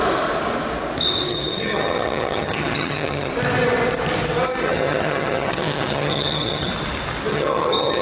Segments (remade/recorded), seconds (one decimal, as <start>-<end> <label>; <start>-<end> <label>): 0.0-1.3 recorded; 1.3-3.3 remade; 3.3-4.6 recorded; 4.6-6.7 remade; 6.7-7.3 recorded; 7.3-8.0 remade